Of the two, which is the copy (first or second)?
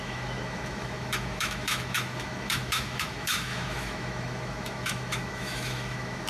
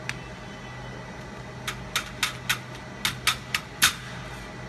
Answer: first